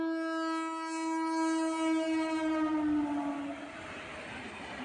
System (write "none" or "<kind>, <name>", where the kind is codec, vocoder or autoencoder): none